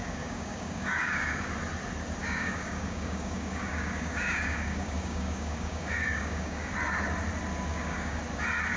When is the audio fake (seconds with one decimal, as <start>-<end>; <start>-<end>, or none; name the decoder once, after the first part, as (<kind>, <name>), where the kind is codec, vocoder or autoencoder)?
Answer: 0.0-1.5 (codec, DAC); 2.2-6.7; 7.7-8.2